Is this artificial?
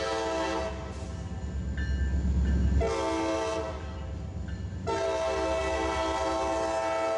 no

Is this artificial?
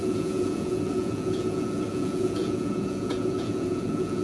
yes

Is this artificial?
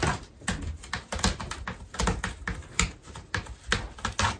no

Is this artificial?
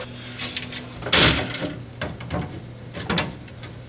no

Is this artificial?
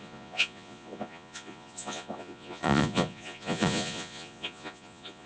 yes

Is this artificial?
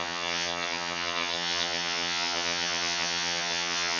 yes